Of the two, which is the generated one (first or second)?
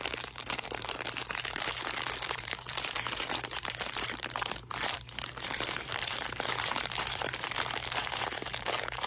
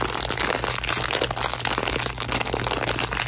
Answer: first